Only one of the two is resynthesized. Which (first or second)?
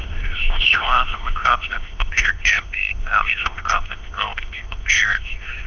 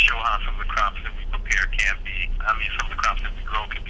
first